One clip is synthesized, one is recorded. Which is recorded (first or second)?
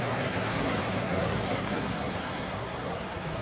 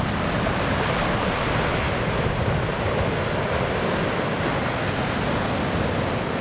second